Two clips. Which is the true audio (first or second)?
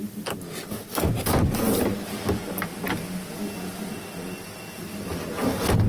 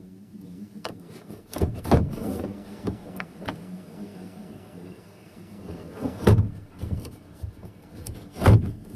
first